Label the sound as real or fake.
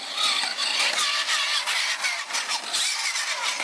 real